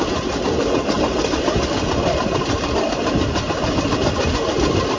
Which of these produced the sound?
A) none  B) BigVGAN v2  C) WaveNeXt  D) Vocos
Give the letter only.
A